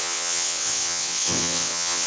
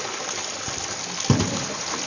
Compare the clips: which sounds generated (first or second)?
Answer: first